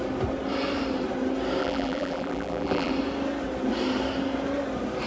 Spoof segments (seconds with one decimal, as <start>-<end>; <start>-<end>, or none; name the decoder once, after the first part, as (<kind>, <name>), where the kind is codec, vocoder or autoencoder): 1.6-2.9 (vocoder, BigVGAN v2)